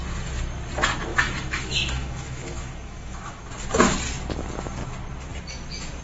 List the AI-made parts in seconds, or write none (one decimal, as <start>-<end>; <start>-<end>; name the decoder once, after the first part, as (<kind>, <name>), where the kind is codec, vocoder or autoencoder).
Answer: 1.1-3.5 (autoencoder, DAC-VAE)